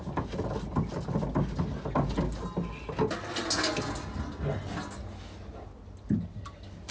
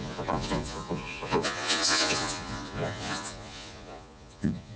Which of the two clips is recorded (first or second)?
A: first